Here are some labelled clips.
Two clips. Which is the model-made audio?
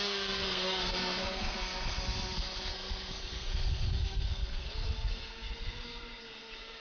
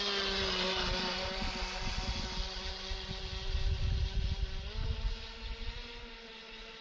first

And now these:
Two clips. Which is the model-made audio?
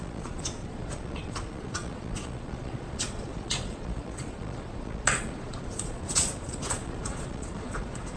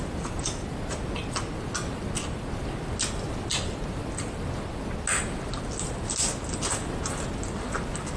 first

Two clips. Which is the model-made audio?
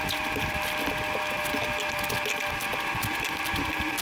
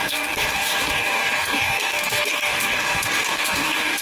second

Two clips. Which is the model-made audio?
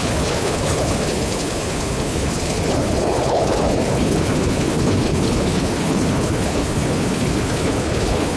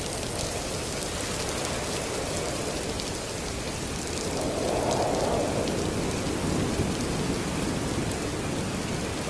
first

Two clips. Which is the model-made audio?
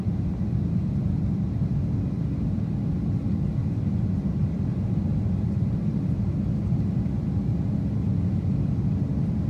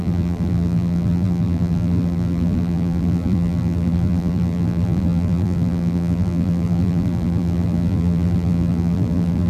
second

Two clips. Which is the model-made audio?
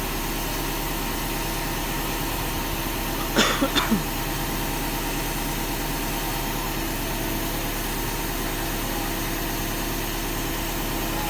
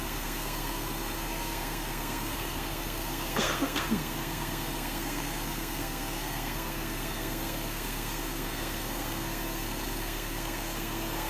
second